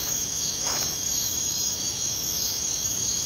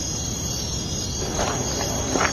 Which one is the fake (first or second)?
first